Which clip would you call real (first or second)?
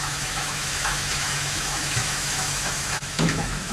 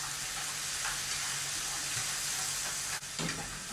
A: second